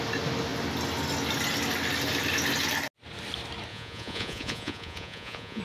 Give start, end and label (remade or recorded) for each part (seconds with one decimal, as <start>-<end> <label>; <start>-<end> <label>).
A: 0.0-3.7 recorded; 3.7-5.6 remade

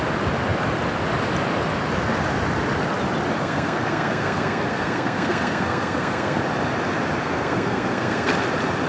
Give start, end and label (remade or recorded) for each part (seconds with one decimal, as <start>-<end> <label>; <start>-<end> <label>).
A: 0.0-3.4 recorded; 3.4-6.4 remade; 6.4-7.2 recorded; 7.2-8.3 remade; 8.3-8.9 recorded

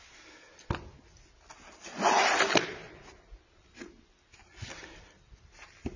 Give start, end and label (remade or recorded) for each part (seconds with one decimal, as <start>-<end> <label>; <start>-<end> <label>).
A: 0.0-6.0 recorded

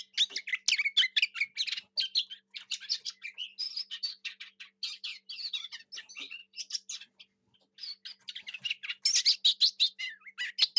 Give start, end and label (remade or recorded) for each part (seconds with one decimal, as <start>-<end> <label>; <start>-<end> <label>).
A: 0.0-10.8 recorded

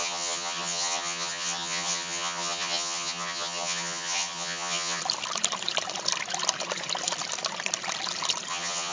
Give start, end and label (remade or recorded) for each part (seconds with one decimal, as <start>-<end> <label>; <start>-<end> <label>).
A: 0.0-5.0 remade; 5.0-8.5 recorded; 8.5-8.9 remade

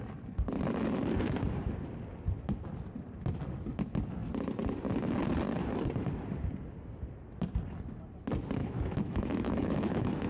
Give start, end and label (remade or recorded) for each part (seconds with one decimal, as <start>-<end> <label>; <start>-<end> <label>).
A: 0.0-8.6 recorded; 8.6-10.3 remade

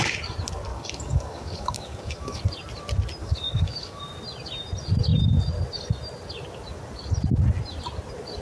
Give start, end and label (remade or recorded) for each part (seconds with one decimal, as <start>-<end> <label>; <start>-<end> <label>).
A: 0.0-0.7 recorded; 0.7-2.4 remade; 2.4-3.2 recorded; 3.2-4.0 remade; 4.0-8.4 recorded

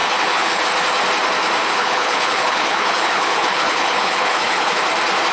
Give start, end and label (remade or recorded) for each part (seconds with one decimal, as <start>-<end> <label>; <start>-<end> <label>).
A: 0.0-0.6 remade; 0.6-1.6 recorded; 1.6-4.8 remade; 4.8-5.3 recorded